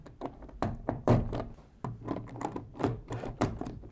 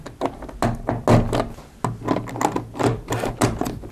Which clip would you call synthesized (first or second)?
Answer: first